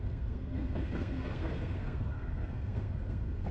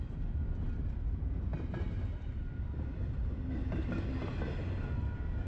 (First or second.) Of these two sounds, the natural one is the second